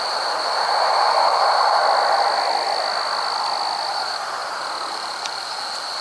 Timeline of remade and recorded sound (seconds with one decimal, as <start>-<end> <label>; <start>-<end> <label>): 0.0-1.8 remade; 1.8-3.9 recorded; 3.9-4.4 remade; 4.4-4.9 recorded; 4.9-6.0 remade